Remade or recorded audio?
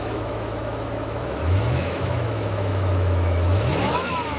remade